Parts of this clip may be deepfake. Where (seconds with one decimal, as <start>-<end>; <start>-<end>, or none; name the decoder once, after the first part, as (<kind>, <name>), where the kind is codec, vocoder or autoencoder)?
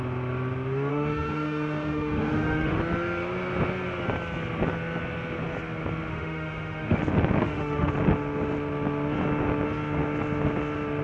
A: 0.9-2.8 (autoencoder, DAC-VAE); 6.1-7.0; 7.4-7.9